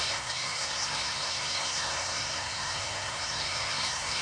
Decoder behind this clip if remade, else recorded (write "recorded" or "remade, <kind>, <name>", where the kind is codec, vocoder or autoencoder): remade, codec, SNAC